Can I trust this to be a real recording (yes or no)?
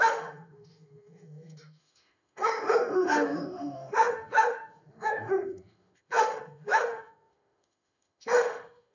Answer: no